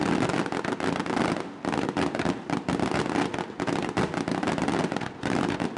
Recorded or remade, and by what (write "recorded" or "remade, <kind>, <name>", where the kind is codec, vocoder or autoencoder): recorded